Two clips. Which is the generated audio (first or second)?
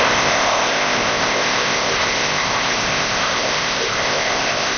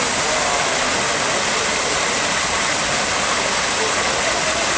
first